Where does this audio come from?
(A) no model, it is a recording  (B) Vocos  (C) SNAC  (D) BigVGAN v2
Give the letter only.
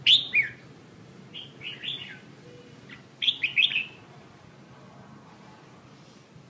A